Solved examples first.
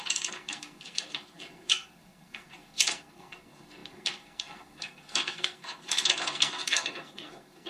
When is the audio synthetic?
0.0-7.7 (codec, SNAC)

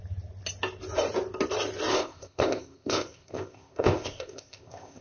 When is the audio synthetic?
1.9-5.0 (codec, ZipCodec)

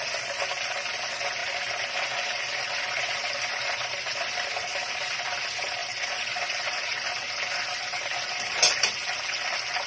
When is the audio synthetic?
5.8-6.4 (vocoder, BigVGAN v2)

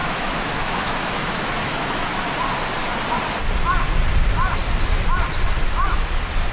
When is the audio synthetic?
0.0-2.0 (autoencoder, DAC-VAE)

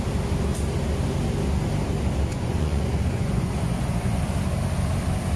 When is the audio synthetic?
2.3-4.2 (vocoder, Vocos)